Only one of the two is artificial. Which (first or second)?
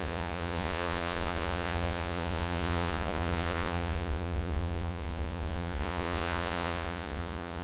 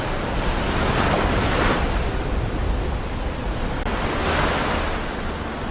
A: first